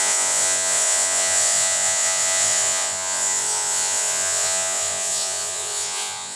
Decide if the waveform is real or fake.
fake